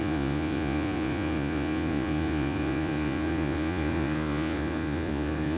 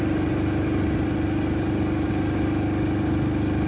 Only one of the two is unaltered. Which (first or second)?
second